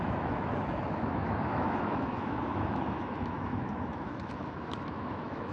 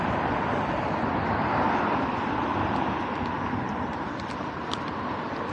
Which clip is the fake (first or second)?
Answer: first